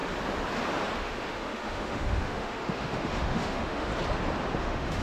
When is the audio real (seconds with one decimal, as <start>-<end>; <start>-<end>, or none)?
0.0-1.0; 3.9-4.6